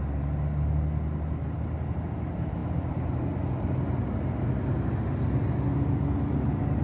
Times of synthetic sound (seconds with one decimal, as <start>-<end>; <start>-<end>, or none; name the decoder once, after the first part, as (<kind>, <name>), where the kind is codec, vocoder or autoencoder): none